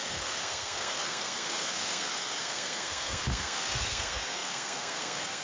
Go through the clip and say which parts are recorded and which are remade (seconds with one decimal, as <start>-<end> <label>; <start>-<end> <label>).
0.0-5.4 remade